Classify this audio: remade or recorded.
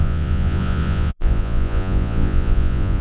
remade